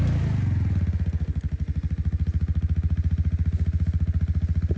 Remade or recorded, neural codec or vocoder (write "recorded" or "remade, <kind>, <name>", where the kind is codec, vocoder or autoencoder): recorded